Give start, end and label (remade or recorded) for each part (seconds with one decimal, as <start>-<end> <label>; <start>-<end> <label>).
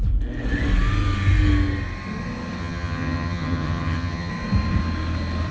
0.0-2.6 recorded; 2.6-4.3 remade; 4.3-5.5 recorded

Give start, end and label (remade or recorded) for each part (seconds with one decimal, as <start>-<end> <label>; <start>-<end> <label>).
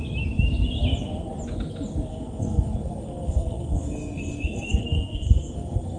0.0-2.1 recorded; 2.1-6.0 remade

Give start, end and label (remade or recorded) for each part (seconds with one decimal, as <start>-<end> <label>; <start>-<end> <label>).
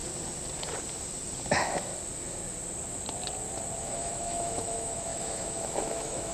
0.0-1.5 recorded; 1.5-1.9 remade; 1.9-3.8 recorded; 3.8-6.3 remade